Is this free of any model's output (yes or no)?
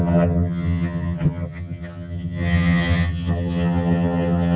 no